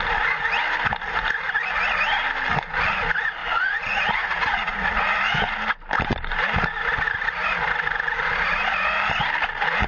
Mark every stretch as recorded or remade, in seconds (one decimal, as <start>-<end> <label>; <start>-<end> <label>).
0.0-3.4 recorded; 3.4-5.2 remade; 5.2-9.9 recorded